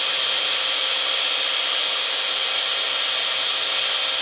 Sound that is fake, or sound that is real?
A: real